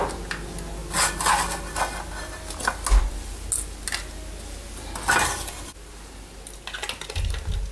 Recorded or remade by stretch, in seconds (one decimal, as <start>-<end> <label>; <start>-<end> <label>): 0.0-7.7 recorded